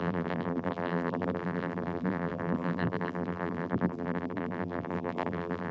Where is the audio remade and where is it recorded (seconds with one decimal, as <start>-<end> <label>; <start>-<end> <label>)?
0.0-5.7 remade